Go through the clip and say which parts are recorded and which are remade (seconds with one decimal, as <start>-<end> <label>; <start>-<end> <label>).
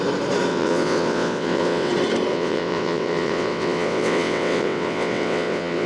0.0-0.5 recorded; 0.5-1.9 remade; 1.9-2.3 recorded; 2.3-5.9 remade